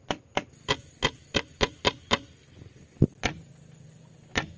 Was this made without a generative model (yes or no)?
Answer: yes